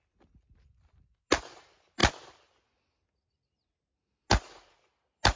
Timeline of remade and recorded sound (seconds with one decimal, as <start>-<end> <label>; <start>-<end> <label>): 0.0-5.4 recorded